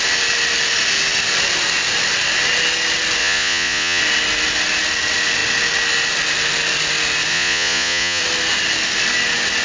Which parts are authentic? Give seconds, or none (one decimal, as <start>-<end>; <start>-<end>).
0.0-3.2; 4.0-7.3; 8.2-9.6